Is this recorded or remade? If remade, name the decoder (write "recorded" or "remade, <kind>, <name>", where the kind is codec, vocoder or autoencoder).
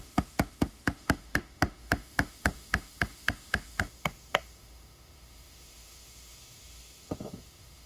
remade, autoencoder, DAC-VAE